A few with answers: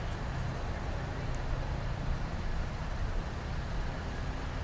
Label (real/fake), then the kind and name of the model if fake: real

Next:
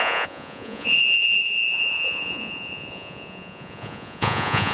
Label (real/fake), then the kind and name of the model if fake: fake, vocoder, Vocos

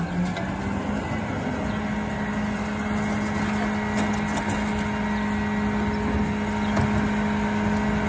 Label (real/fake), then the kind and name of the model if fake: real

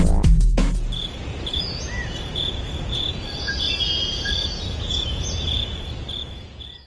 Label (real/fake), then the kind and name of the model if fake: fake, vocoder, Vocos